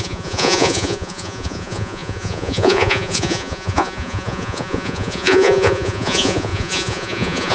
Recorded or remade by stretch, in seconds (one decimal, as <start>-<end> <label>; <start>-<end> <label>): 0.0-7.5 remade